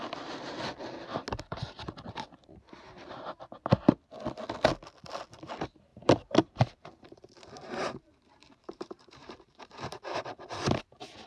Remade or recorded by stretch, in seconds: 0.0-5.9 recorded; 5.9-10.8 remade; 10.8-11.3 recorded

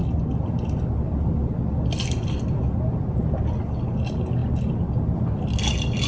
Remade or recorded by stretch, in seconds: 0.0-6.1 recorded

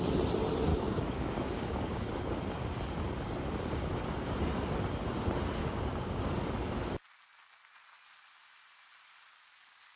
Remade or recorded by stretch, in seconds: 0.0-0.7 recorded; 0.7-2.0 remade; 2.0-5.6 recorded; 5.6-6.3 remade; 6.3-10.0 recorded